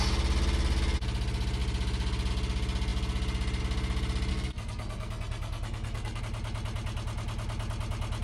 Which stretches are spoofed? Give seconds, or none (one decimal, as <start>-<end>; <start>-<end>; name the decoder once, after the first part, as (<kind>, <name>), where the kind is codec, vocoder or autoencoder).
4.3-6.2 (codec, SNAC)